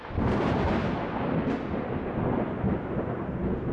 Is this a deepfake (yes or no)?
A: no